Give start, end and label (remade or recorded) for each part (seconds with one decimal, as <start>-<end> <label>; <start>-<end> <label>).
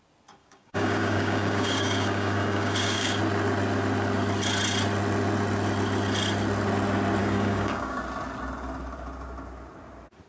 0.0-0.4 recorded; 0.4-3.2 remade; 3.2-7.2 recorded; 7.2-8.0 remade; 8.0-10.3 recorded